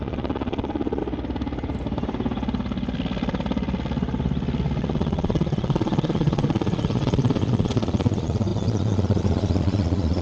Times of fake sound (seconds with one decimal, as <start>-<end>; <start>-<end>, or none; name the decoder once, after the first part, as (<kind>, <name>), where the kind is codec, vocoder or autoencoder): 0.0-1.0 (vocoder, Vocos); 4.8-10.2